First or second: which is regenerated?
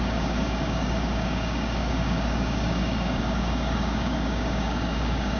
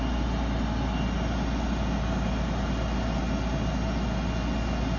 first